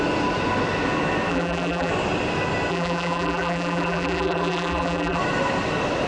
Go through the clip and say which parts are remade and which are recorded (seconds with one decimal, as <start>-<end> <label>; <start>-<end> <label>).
0.0-1.3 recorded; 1.3-1.9 remade; 1.9-2.7 recorded; 2.7-5.2 remade; 5.2-6.1 recorded